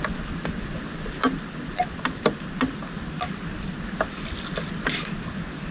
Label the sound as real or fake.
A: real